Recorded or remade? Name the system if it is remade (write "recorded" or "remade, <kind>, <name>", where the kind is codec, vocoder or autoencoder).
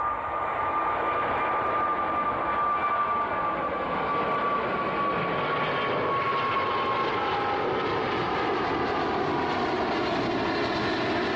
recorded